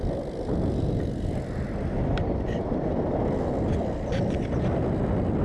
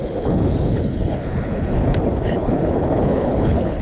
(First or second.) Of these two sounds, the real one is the first